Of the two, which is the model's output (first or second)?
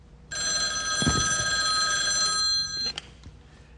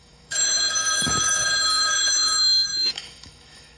second